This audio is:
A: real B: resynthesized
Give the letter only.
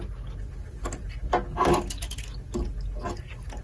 A